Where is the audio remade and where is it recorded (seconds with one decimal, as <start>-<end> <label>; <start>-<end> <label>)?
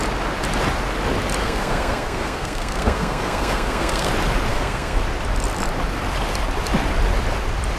0.0-1.4 recorded; 1.4-4.1 remade; 4.1-4.5 recorded; 4.5-5.0 remade; 5.0-7.8 recorded